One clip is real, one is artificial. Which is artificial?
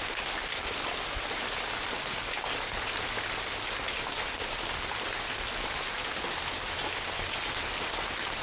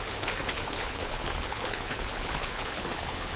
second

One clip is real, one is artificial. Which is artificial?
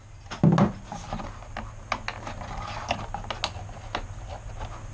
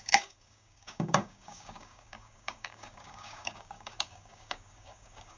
second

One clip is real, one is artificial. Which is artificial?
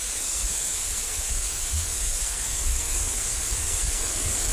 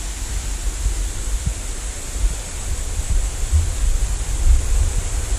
first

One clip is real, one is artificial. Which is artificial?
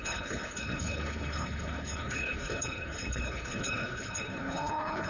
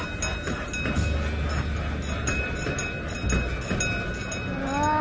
first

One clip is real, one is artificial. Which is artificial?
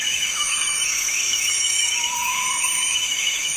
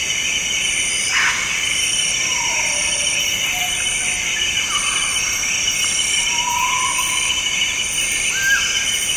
first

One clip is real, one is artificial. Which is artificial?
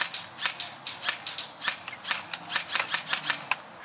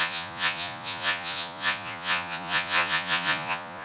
second